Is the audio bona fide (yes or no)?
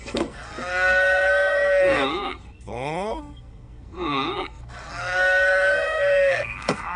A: no